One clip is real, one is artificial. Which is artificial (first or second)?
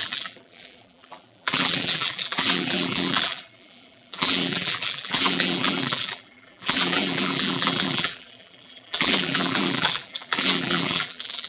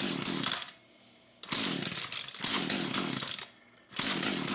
first